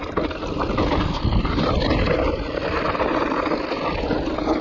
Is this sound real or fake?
real